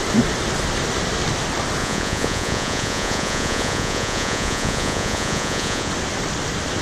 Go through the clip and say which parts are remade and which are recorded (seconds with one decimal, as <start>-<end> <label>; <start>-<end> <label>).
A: 0.0-1.8 recorded; 1.8-5.9 remade; 5.9-6.8 recorded